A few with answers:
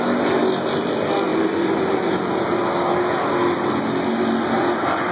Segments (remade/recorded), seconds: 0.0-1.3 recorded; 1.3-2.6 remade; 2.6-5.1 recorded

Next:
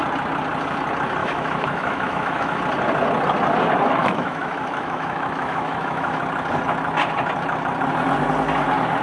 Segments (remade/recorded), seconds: 0.0-1.2 recorded; 1.2-2.6 remade; 2.6-4.0 recorded; 4.0-6.2 remade; 6.2-9.0 recorded

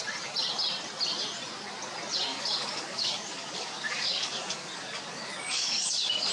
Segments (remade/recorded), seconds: 0.0-2.3 recorded; 2.3-6.3 remade

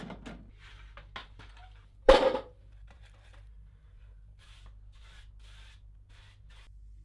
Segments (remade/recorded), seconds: 0.0-1.2 recorded; 1.2-4.6 remade; 4.6-7.0 recorded